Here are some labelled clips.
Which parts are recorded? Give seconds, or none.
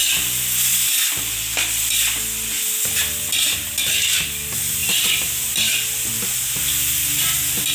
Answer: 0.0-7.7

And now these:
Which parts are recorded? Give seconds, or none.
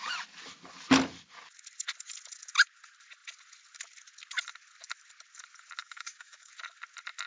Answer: 0.0-5.8; 6.5-7.3